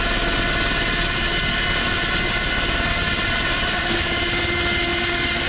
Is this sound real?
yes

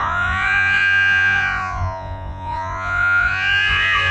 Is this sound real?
no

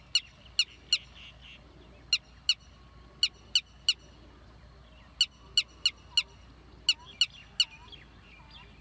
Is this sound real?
yes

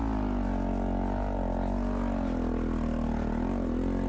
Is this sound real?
yes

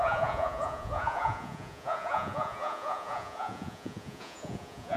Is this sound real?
no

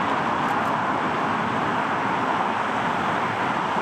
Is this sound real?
yes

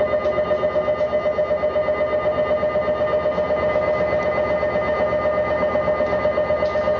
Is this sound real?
yes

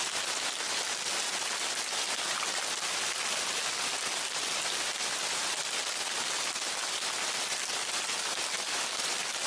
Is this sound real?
yes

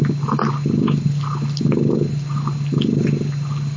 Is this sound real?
yes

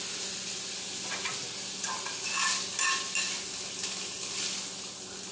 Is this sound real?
yes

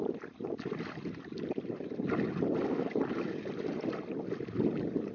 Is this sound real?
yes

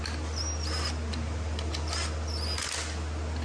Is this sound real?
yes